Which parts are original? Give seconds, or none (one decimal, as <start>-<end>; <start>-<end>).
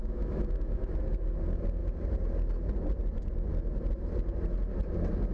0.9-5.3